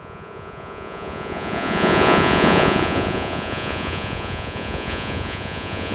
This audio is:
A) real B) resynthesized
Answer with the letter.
B